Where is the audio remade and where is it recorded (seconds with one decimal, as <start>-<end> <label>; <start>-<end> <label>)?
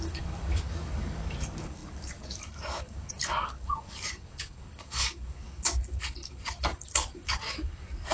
0.0-8.1 remade